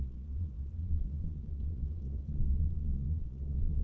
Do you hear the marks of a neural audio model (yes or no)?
yes